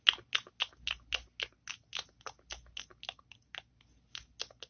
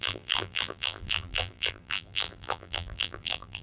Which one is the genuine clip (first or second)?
first